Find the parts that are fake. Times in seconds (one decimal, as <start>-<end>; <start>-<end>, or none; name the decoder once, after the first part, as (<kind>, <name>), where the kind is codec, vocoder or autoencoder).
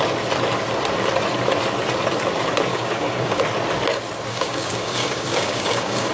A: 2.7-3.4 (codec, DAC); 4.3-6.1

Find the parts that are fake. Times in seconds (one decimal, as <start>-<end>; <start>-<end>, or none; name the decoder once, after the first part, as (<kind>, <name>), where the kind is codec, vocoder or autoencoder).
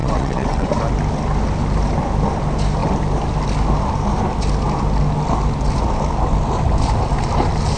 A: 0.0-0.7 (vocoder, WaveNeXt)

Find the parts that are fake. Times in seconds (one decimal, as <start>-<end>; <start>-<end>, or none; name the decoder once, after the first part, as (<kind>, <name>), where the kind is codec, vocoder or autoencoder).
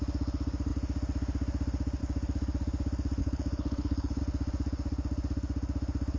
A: 3.2-4.2 (codec, HILCodec)